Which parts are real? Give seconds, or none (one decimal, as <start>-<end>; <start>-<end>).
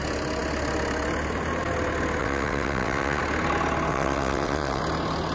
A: 0.0-2.2; 3.2-3.9; 4.8-5.3